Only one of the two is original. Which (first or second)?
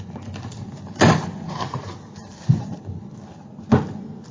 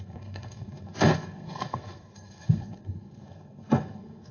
first